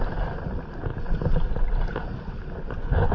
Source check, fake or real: real